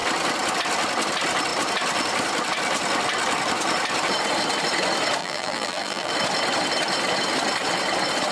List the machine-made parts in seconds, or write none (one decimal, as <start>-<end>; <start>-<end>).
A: 5.2-6.1